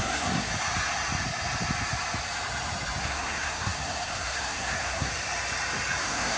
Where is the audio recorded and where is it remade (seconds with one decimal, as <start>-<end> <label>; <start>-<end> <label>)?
0.0-0.5 remade; 0.5-3.0 recorded; 3.0-5.1 remade; 5.1-6.0 recorded; 6.0-6.4 remade